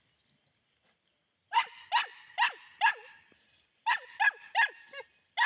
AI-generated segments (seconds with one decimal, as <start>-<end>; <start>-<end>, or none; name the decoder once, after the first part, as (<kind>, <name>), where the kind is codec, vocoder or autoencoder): none